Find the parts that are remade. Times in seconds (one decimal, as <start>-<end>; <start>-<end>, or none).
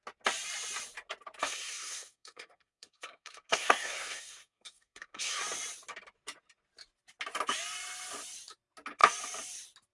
1.4-5.4